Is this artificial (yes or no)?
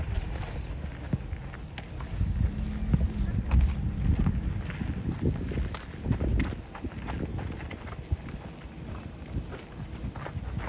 no